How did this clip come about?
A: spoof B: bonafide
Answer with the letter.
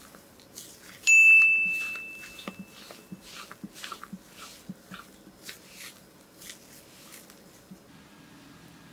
B